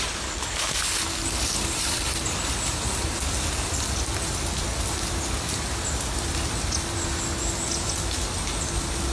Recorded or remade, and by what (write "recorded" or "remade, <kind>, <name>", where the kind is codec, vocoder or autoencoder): recorded